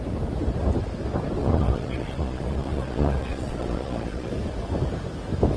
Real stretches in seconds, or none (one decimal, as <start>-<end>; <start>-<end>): 0.0-1.4; 4.3-5.6